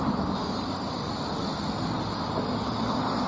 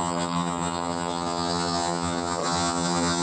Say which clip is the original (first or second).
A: first